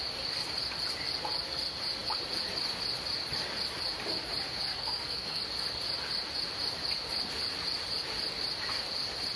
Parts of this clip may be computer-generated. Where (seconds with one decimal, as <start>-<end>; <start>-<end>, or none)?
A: 4.7-5.4